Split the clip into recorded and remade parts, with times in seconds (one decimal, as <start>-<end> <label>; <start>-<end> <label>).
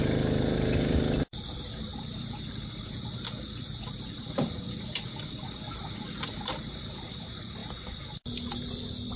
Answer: 0.0-7.6 remade; 7.6-8.7 recorded; 8.7-9.2 remade